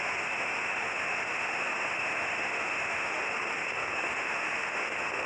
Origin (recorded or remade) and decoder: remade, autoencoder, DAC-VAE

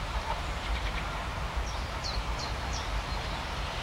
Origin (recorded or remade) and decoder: remade, vocoder, BigVGAN v2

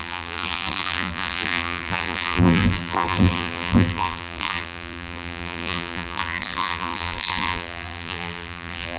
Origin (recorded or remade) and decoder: remade, vocoder, BigVGAN v2